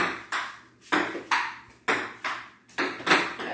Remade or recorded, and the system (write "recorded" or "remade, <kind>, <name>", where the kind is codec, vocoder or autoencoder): recorded